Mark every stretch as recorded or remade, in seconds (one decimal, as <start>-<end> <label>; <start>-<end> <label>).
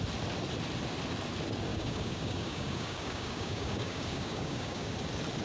0.0-1.7 recorded; 1.7-4.9 remade; 4.9-5.4 recorded